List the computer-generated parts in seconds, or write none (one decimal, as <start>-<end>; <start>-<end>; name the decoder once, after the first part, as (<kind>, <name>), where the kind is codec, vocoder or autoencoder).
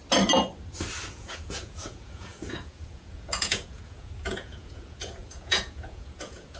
1.1-6.6 (vocoder, Vocos)